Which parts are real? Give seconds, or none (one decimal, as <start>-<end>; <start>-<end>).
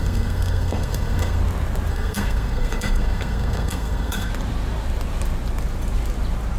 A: 1.4-1.9; 4.3-6.6